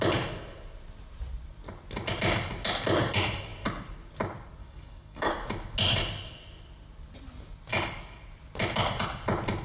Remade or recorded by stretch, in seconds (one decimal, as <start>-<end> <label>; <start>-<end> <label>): 0.0-4.6 recorded; 4.6-5.3 remade; 5.3-7.7 recorded; 7.7-8.2 remade; 8.2-9.6 recorded